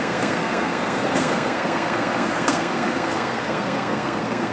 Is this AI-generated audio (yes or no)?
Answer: yes